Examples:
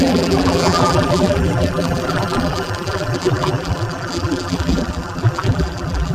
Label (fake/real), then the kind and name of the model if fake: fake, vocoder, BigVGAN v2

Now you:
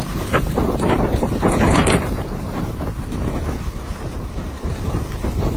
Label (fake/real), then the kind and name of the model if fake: fake, vocoder, BigVGAN v2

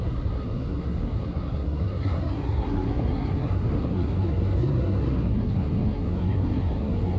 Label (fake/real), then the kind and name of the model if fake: fake, codec, SNAC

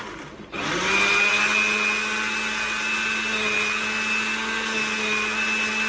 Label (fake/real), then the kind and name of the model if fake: real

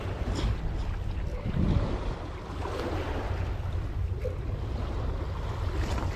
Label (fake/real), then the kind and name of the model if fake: real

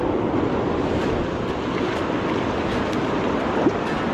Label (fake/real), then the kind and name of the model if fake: real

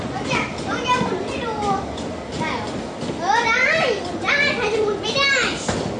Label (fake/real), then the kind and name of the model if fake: real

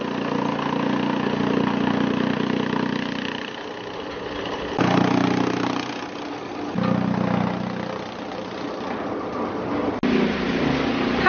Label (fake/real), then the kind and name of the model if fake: real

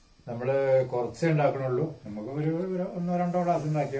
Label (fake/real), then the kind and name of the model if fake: real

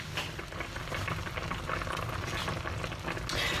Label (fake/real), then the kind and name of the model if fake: real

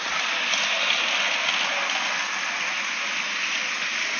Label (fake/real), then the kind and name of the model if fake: real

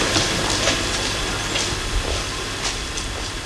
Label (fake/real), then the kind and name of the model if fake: real